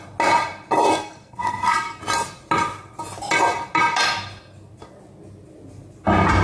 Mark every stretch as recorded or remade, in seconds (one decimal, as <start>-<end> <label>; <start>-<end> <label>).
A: 0.0-1.0 recorded; 1.0-2.0 remade; 2.0-6.4 recorded